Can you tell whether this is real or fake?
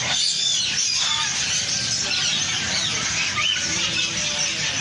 real